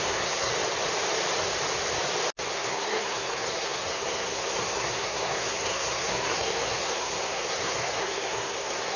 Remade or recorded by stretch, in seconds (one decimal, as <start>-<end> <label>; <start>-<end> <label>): 0.0-0.5 remade; 0.5-2.5 recorded; 2.5-9.0 remade